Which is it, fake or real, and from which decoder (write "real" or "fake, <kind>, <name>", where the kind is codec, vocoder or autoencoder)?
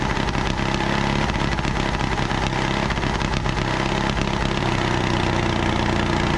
real